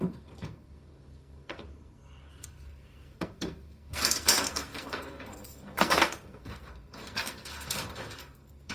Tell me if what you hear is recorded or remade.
remade